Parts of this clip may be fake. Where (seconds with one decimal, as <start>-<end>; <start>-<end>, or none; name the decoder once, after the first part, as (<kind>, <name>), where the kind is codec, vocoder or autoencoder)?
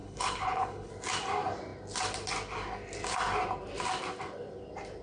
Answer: 0.0-0.9 (codec, HILCodec)